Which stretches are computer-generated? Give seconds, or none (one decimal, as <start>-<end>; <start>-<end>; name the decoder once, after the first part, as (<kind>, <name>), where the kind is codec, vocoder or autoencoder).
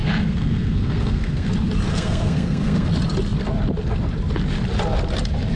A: 0.0-1.5 (codec, SNAC); 1.9-2.9